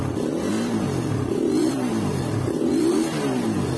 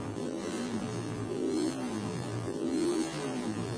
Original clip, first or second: first